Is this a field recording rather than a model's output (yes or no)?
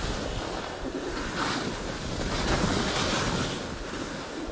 yes